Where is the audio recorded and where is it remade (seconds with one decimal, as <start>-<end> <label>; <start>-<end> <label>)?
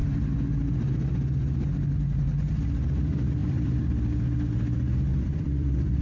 0.0-3.4 recorded; 3.4-3.9 remade; 3.9-5.1 recorded; 5.1-6.0 remade